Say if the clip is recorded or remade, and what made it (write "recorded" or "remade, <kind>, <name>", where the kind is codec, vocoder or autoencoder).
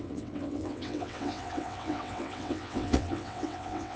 remade, vocoder, WaveNeXt